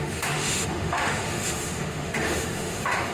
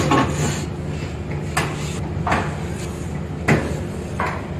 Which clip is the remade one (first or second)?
first